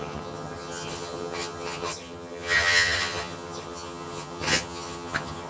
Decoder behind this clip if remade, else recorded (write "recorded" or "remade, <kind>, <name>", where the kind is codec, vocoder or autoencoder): remade, vocoder, HiFi-GAN